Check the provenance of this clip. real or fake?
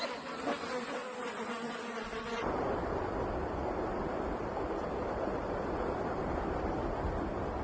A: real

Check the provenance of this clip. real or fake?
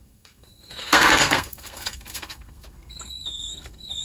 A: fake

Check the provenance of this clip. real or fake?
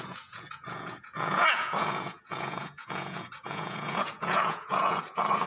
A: fake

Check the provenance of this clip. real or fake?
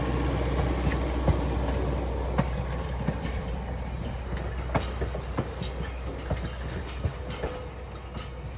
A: real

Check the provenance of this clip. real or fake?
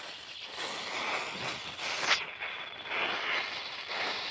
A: real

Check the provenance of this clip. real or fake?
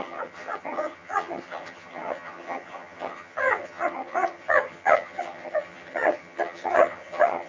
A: fake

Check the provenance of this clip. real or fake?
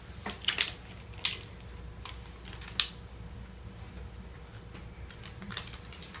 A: real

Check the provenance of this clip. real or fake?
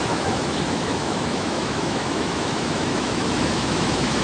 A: fake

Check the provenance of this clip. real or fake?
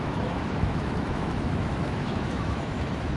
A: fake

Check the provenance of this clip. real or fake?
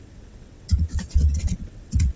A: fake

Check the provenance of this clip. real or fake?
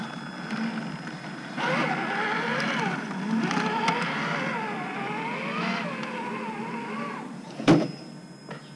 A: real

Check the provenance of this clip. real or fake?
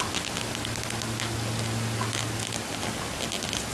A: real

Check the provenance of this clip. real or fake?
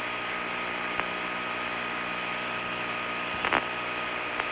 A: real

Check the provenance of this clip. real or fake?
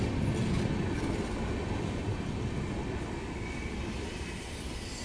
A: real